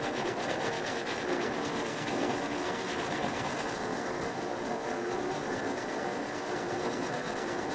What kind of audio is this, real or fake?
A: fake